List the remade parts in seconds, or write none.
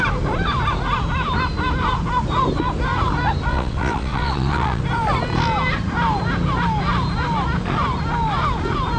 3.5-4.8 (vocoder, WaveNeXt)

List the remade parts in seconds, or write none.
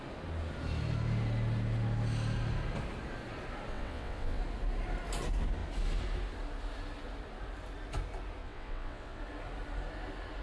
3.7-4.4 (vocoder, WaveNeXt); 8.4-9.2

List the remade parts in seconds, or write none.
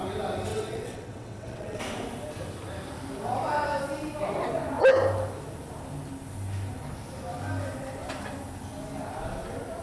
0.5-1.8 (vocoder, WaveNeXt)